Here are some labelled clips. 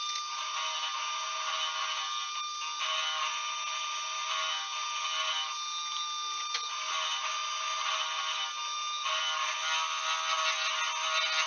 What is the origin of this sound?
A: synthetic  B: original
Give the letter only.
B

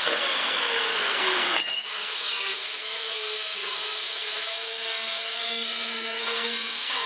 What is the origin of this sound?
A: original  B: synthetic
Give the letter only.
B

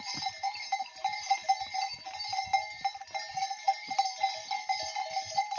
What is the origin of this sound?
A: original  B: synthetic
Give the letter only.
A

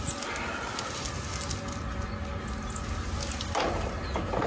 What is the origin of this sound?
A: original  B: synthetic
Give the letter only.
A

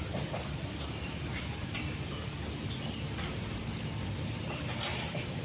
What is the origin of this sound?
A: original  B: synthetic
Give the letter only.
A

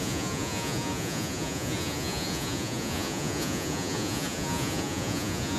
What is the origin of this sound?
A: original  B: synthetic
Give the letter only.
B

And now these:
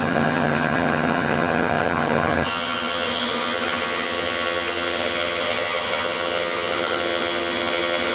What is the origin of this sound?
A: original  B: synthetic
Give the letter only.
B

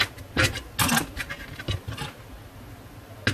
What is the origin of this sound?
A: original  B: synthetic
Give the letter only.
A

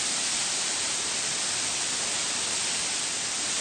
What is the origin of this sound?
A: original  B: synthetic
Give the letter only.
B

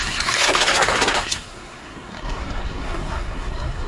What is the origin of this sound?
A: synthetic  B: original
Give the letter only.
A